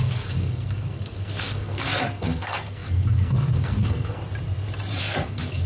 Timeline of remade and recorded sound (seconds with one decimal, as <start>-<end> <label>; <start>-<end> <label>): 0.0-4.2 remade; 4.2-5.0 recorded; 5.0-5.7 remade